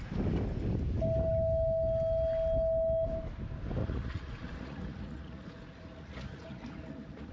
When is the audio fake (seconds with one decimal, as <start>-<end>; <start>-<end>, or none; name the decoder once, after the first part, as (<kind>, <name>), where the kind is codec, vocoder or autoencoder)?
3.8-7.3 (vocoder, Vocos)